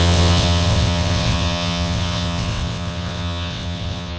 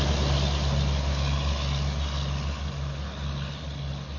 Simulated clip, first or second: first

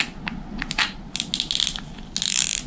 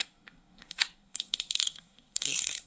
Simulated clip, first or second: second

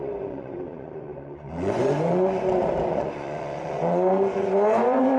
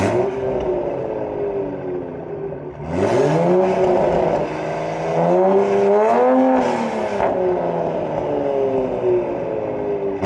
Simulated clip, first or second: first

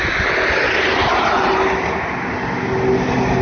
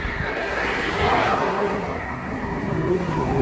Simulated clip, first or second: second